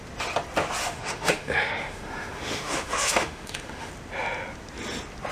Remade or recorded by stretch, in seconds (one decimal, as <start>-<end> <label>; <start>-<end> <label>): 0.0-0.8 recorded; 0.8-3.9 remade; 3.9-5.3 recorded